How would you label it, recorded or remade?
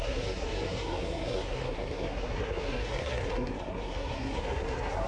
remade